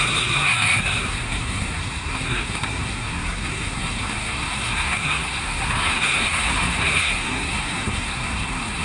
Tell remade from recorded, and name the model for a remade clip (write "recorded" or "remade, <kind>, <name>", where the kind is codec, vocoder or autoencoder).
remade, codec, SNAC